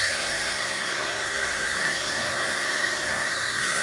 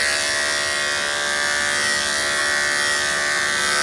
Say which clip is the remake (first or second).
first